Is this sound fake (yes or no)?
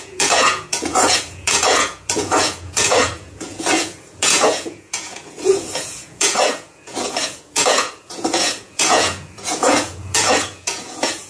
yes